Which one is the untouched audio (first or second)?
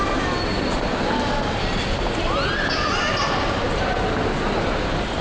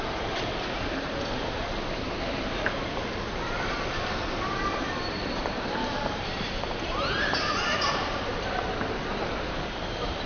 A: first